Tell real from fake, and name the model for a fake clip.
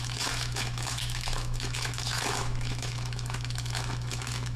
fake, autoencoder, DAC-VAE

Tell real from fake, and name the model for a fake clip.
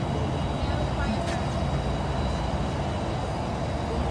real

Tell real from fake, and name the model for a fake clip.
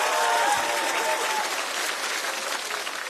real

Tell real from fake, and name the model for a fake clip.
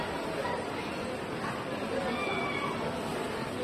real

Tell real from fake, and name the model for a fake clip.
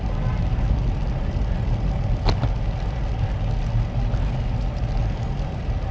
real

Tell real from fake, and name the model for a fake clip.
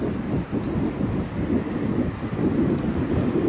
real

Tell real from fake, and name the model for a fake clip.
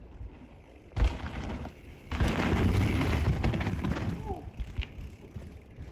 real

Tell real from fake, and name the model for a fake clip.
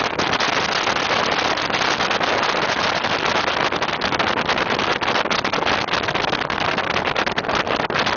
real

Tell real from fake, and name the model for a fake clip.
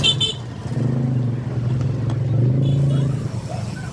real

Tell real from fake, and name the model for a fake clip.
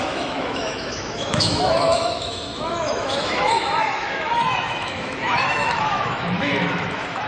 fake, autoencoder, DAC-VAE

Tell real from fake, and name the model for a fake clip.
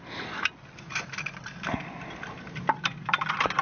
real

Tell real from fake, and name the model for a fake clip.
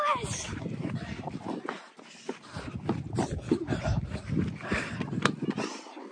real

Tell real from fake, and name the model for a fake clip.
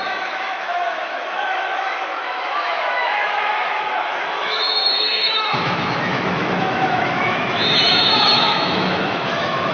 fake, autoencoder, DAC-VAE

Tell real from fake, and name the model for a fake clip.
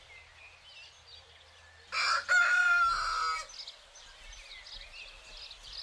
real